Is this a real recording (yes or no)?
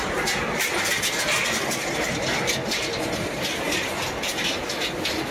yes